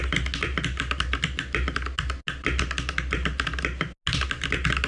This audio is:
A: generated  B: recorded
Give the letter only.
B